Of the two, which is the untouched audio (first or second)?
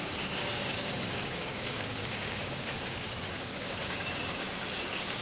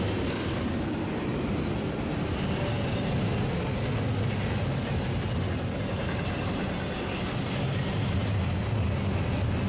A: second